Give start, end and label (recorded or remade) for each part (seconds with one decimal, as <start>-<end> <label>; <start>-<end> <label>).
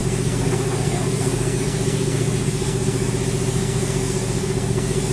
0.0-3.1 remade; 3.1-3.5 recorded; 3.5-5.1 remade